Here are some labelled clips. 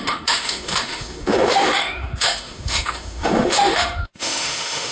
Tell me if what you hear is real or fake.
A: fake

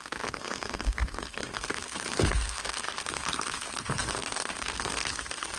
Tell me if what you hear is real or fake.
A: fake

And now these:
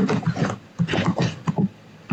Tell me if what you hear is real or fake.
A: real